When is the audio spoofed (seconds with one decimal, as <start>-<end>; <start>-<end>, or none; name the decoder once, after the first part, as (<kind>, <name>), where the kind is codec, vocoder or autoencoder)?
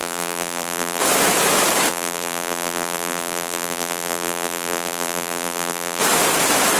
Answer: 0.0-1.0 (vocoder, BigVGAN v2); 1.9-6.0